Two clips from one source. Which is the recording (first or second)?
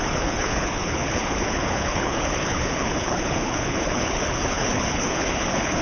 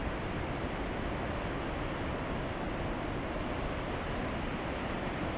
second